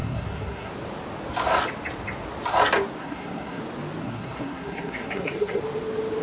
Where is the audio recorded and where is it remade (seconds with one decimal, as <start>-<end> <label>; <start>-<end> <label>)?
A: 0.0-0.7 remade; 0.7-3.0 recorded; 3.0-3.6 remade; 3.6-4.0 recorded; 4.0-5.6 remade; 5.6-6.2 recorded